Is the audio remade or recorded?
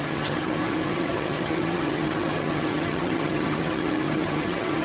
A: remade